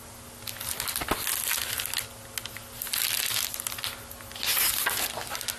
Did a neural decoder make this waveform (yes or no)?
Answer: no